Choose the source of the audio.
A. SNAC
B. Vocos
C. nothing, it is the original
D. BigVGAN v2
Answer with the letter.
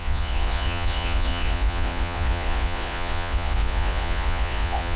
B